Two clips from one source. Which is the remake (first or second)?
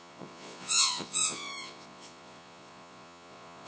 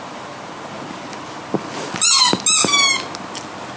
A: first